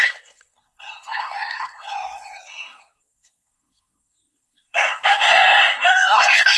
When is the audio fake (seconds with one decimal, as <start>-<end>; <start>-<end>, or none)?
0.0-6.6